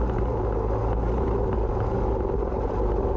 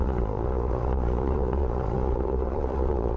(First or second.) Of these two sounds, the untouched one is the first